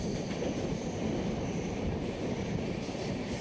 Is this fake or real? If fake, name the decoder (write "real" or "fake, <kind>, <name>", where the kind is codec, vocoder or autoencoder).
real